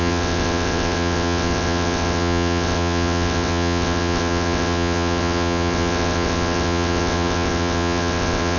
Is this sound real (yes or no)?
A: no